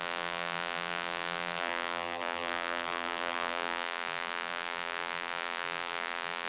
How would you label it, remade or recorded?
remade